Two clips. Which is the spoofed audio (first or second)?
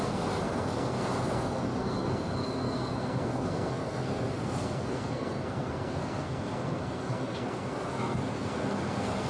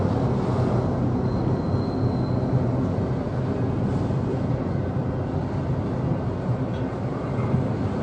first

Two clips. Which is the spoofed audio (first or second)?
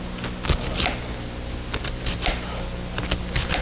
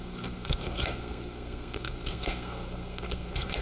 second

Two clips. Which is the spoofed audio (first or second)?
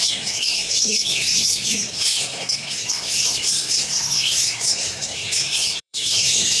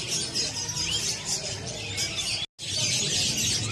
first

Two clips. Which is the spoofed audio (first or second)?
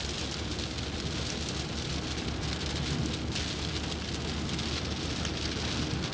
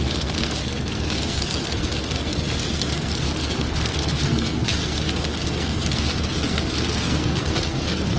second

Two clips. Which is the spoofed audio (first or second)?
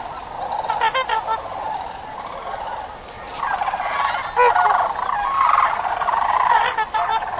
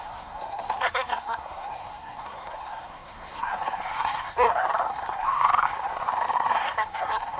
second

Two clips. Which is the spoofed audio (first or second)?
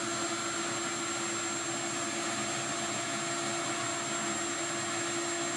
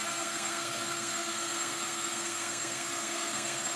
second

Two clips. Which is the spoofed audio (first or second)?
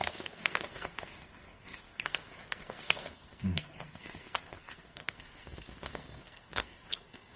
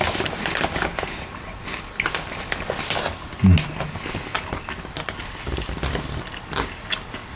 first